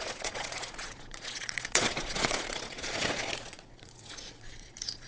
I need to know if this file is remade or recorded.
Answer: remade